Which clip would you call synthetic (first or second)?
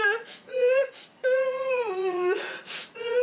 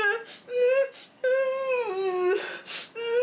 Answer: first